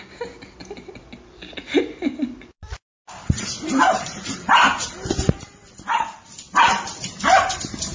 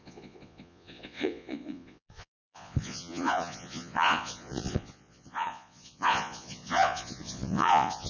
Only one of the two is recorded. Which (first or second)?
first